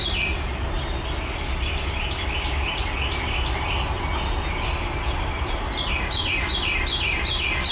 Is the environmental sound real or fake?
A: real